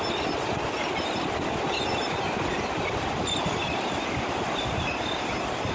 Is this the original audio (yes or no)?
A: yes